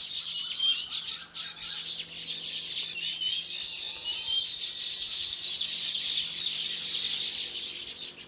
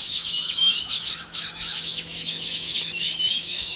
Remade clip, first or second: second